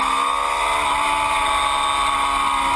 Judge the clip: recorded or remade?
recorded